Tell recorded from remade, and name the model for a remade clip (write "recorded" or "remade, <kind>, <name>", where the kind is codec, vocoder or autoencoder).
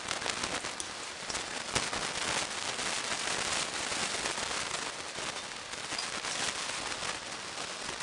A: recorded